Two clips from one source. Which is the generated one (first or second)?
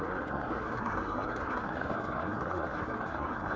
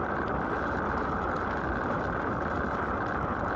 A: first